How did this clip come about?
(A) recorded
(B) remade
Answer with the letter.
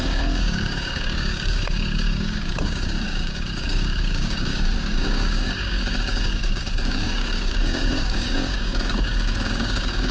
B